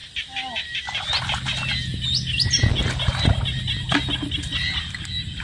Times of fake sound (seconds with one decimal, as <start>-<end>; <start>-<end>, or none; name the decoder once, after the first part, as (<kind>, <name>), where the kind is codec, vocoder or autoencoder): none